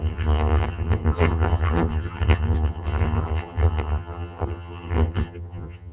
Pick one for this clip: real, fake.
fake